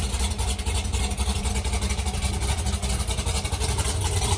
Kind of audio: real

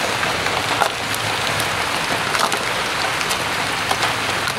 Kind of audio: real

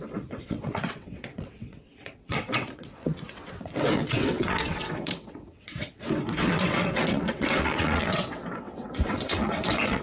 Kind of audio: fake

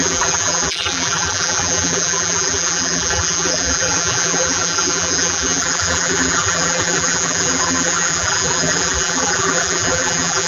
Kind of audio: fake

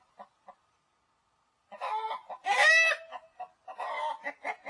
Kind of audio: real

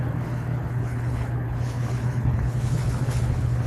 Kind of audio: fake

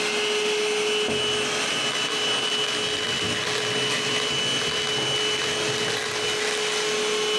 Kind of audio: real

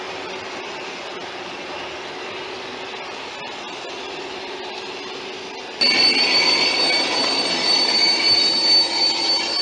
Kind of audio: real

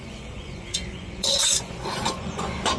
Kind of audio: fake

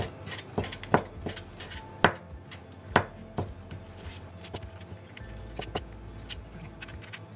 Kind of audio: real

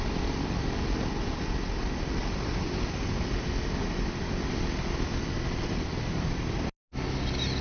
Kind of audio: real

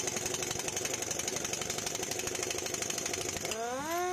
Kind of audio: real